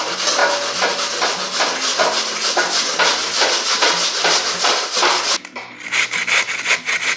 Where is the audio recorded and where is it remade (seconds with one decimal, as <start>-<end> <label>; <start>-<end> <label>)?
0.0-7.2 recorded